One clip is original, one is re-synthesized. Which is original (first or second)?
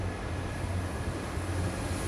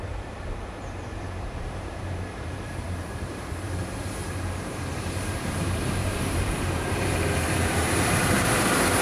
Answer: first